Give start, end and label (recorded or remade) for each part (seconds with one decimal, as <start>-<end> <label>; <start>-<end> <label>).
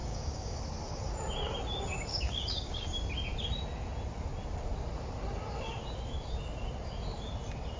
0.0-0.6 remade; 0.6-2.1 recorded; 2.1-2.7 remade; 2.7-7.8 recorded